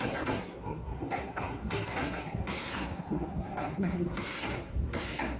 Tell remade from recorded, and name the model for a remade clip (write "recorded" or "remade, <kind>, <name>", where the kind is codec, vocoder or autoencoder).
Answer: remade, codec, SNAC